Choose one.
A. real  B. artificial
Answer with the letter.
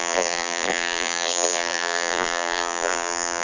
B